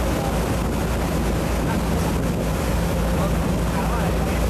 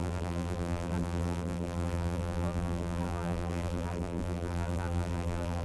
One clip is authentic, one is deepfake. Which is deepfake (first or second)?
second